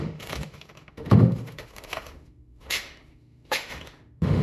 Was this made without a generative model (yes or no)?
no